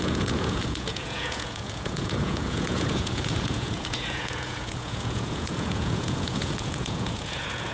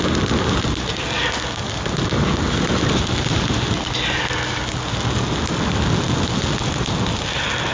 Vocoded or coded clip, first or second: first